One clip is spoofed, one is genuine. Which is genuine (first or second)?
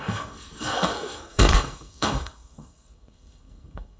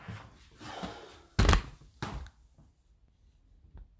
second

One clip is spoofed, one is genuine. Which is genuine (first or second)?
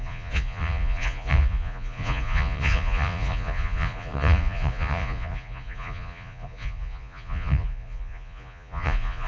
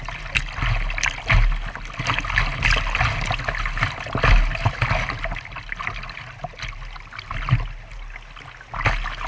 second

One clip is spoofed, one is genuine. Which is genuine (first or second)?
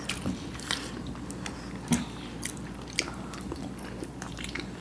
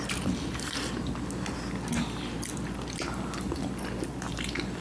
second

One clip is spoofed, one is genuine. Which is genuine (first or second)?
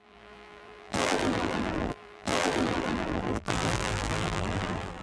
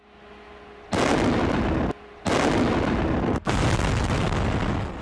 second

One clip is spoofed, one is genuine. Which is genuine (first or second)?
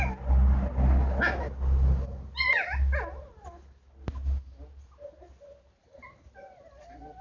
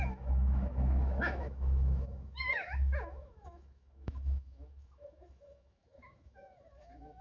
first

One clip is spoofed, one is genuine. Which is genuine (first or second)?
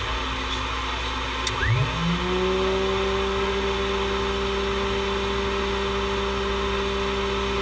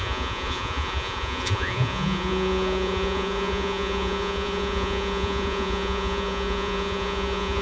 first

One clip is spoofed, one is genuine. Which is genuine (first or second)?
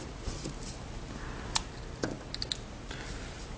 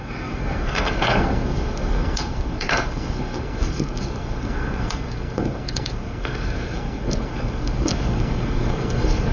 first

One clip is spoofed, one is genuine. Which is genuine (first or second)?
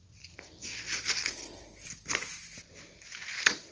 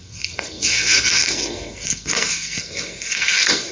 first